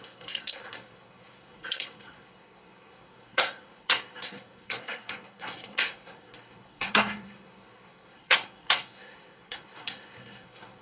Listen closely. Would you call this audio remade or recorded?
remade